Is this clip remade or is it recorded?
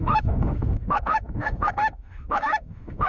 remade